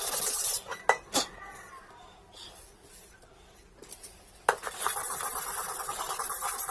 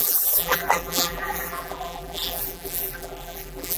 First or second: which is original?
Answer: first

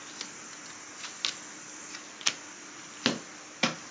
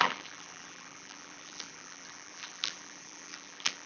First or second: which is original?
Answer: first